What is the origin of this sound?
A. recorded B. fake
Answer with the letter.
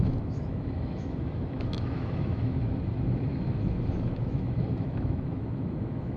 B